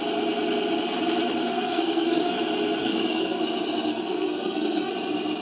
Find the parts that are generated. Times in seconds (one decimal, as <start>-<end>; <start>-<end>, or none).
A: 1.5-2.3; 2.8-3.4; 3.9-4.9